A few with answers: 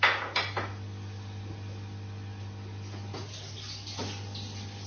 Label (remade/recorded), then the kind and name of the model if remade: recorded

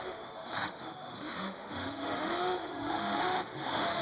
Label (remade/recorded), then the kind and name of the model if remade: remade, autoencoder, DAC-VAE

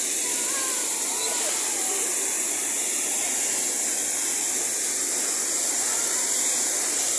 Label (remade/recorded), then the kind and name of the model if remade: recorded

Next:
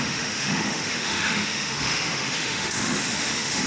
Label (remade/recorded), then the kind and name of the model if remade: remade, autoencoder, DAC-VAE